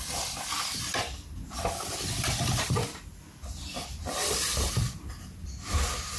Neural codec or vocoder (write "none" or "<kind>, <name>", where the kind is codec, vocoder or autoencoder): none